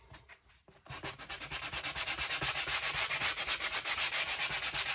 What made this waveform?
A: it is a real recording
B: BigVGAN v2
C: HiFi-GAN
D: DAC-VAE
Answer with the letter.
B